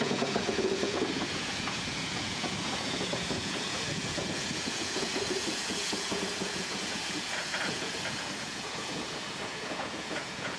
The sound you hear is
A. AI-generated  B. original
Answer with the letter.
A